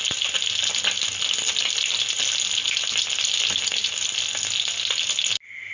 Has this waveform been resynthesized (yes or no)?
no